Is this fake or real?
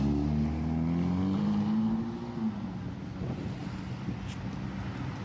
real